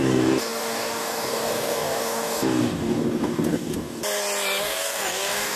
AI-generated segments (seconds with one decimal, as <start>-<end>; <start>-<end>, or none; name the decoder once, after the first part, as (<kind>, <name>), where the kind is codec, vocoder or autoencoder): 0.0-4.0 (codec, DAC); 4.6-5.6